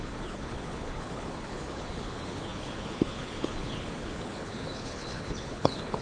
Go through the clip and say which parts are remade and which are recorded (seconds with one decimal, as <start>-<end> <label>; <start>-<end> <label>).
0.0-6.0 remade